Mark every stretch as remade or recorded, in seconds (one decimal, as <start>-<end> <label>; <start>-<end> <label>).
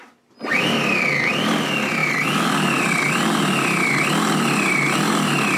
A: 0.0-5.6 recorded